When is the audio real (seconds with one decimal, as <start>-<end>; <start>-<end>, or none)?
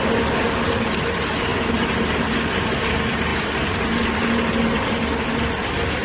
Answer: 0.0-6.0